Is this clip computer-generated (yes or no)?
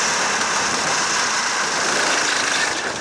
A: no